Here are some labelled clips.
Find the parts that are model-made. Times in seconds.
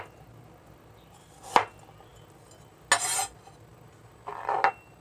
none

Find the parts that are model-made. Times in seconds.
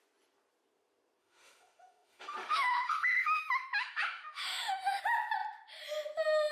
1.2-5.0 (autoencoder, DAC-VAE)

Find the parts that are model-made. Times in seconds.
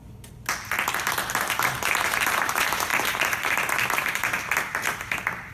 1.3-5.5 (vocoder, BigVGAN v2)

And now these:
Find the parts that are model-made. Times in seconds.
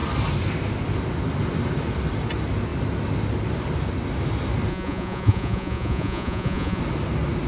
4.7-6.8 (vocoder, Vocos)